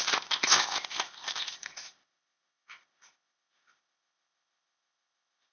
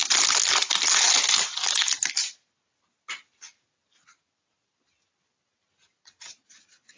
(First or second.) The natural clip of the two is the second